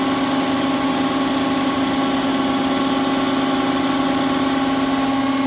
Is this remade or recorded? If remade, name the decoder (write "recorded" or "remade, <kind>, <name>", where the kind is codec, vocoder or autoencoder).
recorded